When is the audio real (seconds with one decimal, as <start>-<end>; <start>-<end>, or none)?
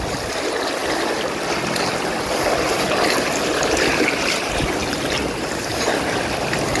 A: 0.0-6.8